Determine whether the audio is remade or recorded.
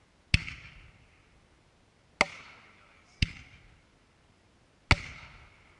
recorded